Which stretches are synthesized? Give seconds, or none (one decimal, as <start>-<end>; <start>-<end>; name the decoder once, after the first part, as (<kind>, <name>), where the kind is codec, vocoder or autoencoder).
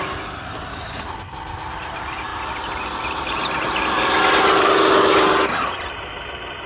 none